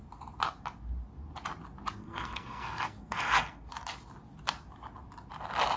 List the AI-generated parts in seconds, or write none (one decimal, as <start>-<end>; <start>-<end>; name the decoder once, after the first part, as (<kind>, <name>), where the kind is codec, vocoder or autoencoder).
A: 2.0-3.7 (codec, SNAC)

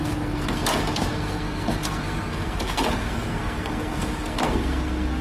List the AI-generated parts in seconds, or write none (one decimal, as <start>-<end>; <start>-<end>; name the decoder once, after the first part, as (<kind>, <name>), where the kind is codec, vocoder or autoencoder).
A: 0.0-5.2 (codec, SNAC)

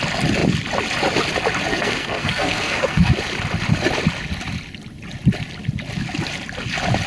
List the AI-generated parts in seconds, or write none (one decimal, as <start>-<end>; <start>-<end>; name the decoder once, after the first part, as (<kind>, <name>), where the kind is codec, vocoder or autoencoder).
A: 1.7-3.1 (codec, SNAC)

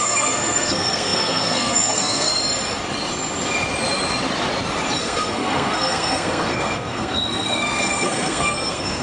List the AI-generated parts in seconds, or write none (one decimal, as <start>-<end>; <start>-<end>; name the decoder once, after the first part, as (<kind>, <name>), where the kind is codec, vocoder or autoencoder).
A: 0.0-2.4 (codec, SNAC); 5.0-9.0